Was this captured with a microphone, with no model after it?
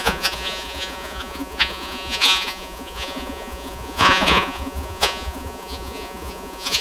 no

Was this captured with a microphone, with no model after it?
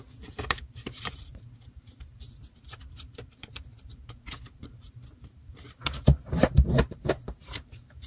no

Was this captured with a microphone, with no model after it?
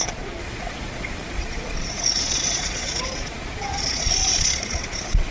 no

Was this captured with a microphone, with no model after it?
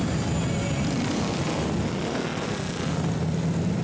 yes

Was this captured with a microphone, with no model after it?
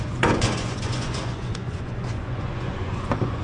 no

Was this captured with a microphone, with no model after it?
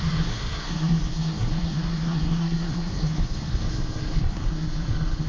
no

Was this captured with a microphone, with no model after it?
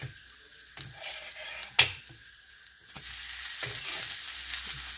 yes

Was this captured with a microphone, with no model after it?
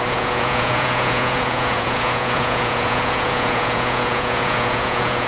no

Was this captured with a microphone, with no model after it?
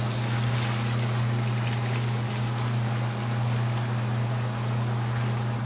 yes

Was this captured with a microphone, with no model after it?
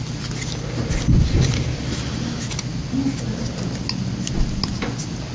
yes